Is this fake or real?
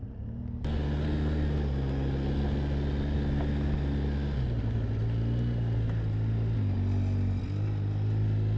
real